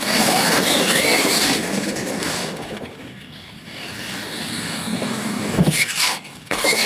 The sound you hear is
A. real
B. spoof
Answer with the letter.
B